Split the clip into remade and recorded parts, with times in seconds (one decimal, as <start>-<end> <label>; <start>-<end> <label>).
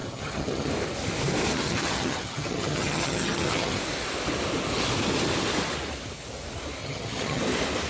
0.0-0.7 remade; 0.7-1.5 recorded; 1.5-3.8 remade; 3.8-6.8 recorded; 6.8-7.4 remade; 7.4-7.9 recorded